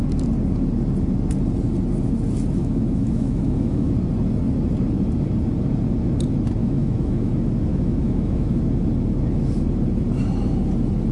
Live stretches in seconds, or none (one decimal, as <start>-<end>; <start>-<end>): 0.0-2.6; 3.9-6.6; 7.3-7.7; 8.6-11.1